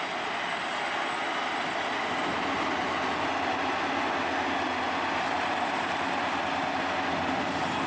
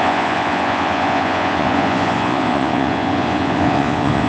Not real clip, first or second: second